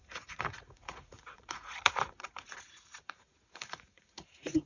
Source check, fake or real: fake